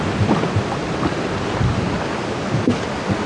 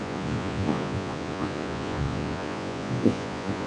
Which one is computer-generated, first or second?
second